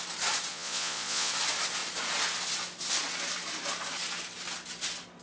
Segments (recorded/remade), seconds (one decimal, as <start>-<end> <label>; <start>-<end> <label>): 0.0-0.5 recorded; 0.5-1.3 remade; 1.3-5.2 recorded